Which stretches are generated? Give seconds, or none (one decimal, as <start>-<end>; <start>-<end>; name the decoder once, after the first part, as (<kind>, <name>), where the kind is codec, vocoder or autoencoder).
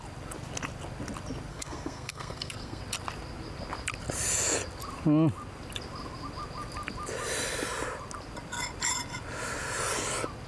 1.5-2.8 (codec, SNAC)